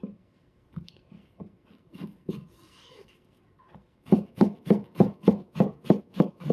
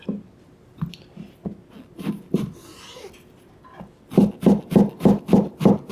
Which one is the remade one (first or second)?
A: first